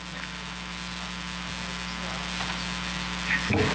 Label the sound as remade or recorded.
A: recorded